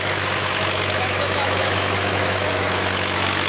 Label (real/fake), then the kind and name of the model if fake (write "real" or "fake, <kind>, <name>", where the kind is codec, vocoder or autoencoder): fake, autoencoder, DAC-VAE